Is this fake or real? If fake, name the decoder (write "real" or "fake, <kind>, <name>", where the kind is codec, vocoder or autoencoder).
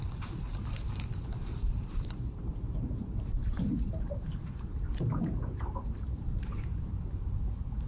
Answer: fake, vocoder, BigVGAN v2